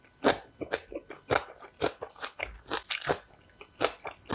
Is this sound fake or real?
real